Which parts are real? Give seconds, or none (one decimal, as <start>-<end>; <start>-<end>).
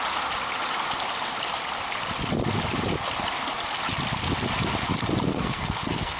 0.0-5.3